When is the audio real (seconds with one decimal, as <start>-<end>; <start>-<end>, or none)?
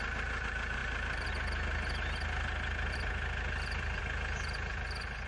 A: 0.0-5.3